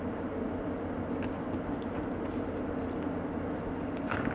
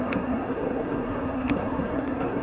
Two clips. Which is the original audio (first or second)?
first